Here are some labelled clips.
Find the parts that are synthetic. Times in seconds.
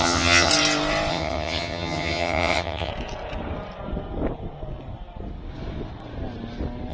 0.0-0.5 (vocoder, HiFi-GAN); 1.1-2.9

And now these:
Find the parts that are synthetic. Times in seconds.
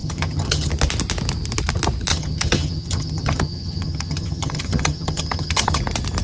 0.0-0.7 (vocoder, HiFi-GAN); 2.1-5.8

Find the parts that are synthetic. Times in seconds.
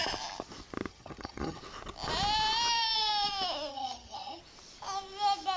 0.9-1.6 (vocoder, HiFi-GAN); 3.7-4.4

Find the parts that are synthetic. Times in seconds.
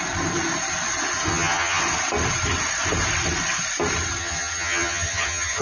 1.3-1.8 (vocoder, HiFi-GAN); 4.2-5.6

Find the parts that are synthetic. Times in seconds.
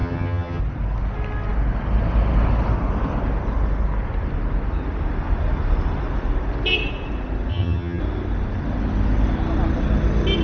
0.0-0.6 (vocoder, HiFi-GAN); 7.5-8.0